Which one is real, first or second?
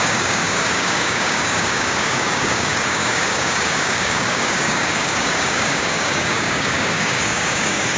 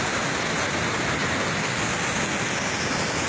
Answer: second